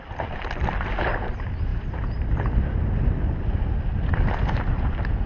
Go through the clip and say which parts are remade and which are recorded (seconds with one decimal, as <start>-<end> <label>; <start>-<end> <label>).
0.0-5.3 recorded